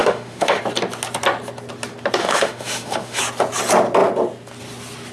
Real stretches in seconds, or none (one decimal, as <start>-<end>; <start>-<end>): 0.6-2.2; 3.2-5.1